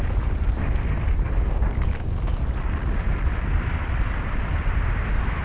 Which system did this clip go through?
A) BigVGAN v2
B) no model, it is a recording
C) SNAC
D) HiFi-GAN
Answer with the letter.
B